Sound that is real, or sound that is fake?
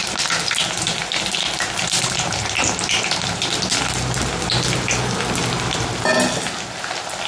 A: real